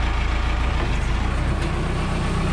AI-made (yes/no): no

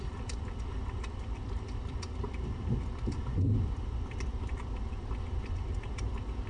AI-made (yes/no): yes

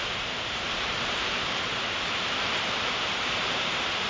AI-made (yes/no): yes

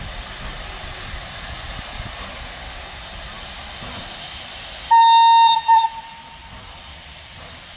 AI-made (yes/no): no